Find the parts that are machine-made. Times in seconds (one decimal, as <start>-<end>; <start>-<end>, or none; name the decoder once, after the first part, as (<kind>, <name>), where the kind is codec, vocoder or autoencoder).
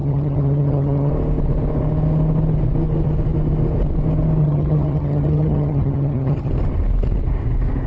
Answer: 0.0-1.1 (vocoder, HiFi-GAN); 4.4-6.5